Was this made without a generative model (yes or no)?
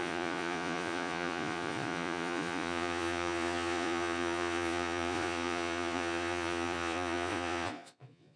no